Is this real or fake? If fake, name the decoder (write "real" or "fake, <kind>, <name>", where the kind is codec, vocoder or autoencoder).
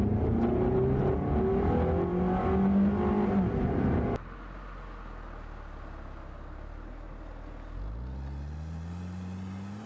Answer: real